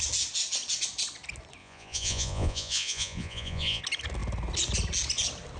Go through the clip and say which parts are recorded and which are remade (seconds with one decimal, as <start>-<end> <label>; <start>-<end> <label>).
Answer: 0.0-1.6 recorded; 1.6-3.8 remade; 3.8-5.6 recorded